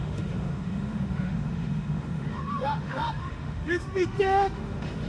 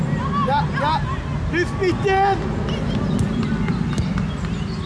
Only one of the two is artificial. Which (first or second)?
first